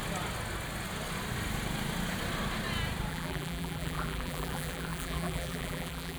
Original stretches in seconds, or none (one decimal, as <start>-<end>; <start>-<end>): 0.0-3.1